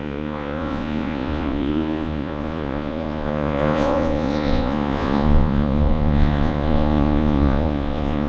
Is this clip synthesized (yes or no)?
yes